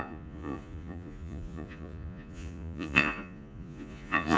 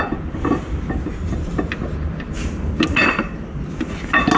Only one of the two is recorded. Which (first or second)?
second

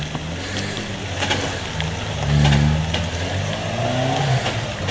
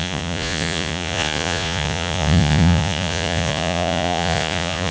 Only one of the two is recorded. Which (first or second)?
first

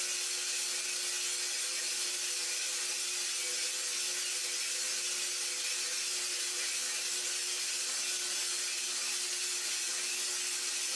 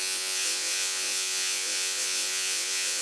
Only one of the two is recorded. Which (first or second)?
first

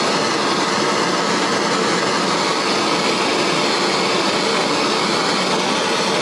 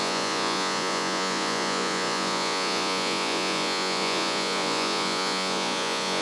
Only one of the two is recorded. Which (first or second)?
first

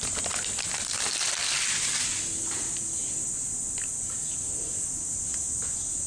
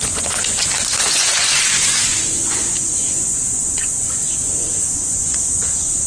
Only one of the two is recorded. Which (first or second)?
first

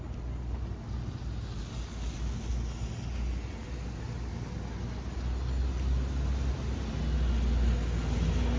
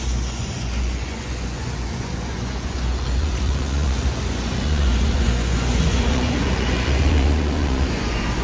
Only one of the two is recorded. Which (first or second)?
first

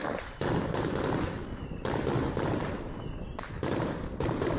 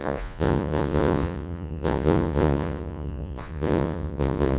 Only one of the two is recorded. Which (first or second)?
first